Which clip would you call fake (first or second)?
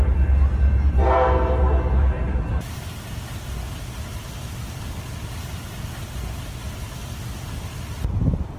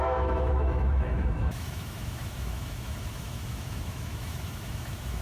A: second